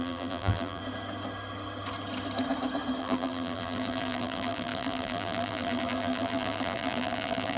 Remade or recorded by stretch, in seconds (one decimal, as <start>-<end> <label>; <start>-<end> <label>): 0.0-0.8 remade; 0.8-3.0 recorded; 3.0-7.6 remade